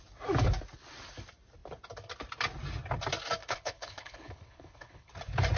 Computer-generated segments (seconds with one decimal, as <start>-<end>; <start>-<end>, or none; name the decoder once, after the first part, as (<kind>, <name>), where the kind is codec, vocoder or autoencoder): 3.4-5.1 (codec, HILCodec)